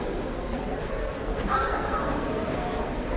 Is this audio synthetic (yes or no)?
yes